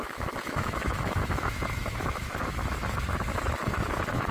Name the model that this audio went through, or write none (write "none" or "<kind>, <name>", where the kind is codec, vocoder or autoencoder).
autoencoder, DAC-VAE